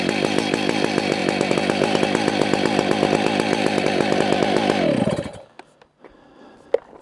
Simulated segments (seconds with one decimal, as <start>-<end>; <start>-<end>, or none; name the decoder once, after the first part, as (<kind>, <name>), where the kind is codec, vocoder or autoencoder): none